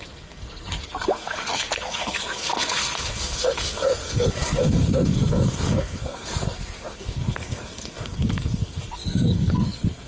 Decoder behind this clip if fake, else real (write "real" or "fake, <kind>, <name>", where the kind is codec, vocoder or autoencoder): fake, codec, SNAC